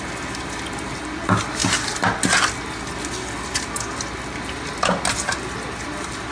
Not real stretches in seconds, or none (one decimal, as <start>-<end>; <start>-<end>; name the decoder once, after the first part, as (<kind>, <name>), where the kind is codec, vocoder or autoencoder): none